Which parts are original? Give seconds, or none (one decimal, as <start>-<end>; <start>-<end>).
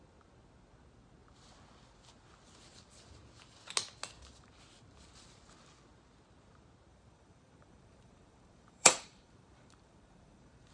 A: 0.0-6.9